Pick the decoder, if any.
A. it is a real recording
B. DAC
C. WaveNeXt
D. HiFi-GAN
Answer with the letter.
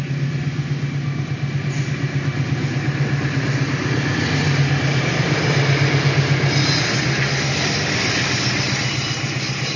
A